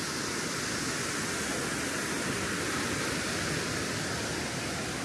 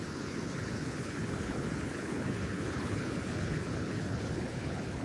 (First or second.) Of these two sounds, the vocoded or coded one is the second